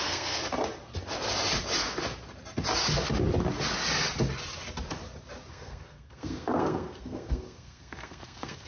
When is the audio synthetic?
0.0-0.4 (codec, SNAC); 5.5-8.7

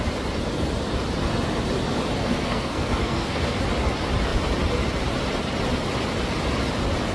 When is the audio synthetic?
2.2-3.6 (codec, SNAC)

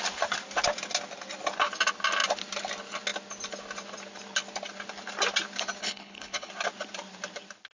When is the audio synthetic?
5.8-6.5 (codec, HILCodec)

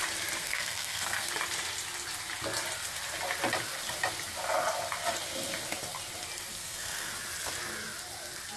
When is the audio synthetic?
0.4-1.3 (codec, SNAC); 6.6-7.1